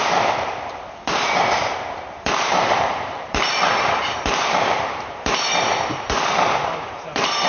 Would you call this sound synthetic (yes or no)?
yes